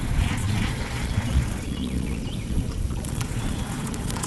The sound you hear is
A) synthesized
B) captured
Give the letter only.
A